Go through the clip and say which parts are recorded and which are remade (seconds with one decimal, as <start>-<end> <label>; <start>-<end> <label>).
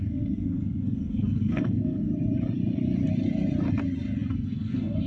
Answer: 0.0-2.1 remade; 2.1-4.3 recorded; 4.3-5.1 remade